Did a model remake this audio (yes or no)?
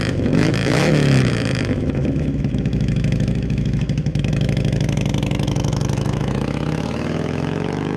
yes